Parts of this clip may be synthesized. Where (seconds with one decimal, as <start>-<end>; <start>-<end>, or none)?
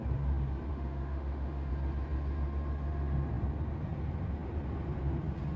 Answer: 0.7-1.7